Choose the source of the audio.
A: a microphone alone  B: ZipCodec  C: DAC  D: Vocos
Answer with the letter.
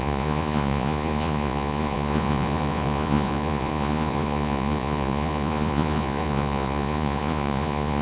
D